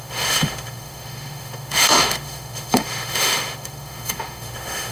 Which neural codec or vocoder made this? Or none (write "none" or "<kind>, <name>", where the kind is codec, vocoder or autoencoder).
autoencoder, DAC-VAE